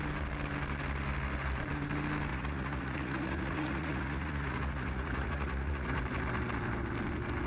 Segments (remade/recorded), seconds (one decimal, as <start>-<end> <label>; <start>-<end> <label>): 0.0-2.3 recorded; 2.3-6.0 remade; 6.0-7.5 recorded